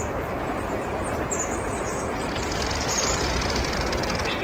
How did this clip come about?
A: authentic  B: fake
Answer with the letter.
A